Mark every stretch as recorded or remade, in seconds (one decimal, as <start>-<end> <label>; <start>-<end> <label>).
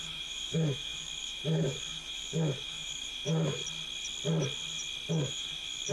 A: 0.0-3.6 remade; 3.6-5.1 recorded; 5.1-5.9 remade